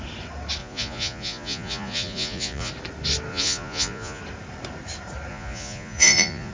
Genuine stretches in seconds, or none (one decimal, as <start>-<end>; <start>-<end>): 0.0-0.6; 2.7-3.3; 4.2-5.3